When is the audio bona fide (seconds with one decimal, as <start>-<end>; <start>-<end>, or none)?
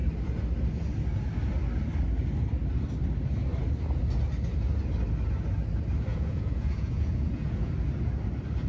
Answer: 0.0-6.1; 7.7-8.7